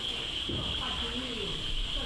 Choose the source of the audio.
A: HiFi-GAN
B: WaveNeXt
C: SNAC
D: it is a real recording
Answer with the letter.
D